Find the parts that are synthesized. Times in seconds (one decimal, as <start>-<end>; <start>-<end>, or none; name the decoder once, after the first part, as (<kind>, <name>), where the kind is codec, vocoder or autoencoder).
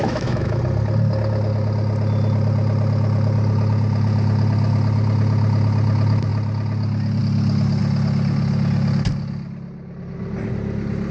0.0-0.6 (autoencoder, DAC-VAE)